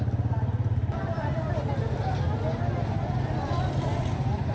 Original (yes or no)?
yes